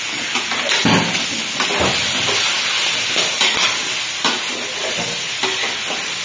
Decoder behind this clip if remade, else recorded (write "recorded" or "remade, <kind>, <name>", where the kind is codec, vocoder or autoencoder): recorded